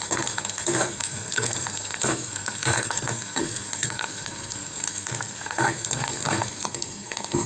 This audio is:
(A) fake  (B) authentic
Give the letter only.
A